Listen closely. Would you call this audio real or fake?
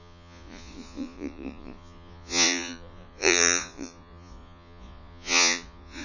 fake